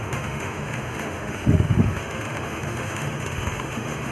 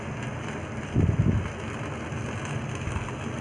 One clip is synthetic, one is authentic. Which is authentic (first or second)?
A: second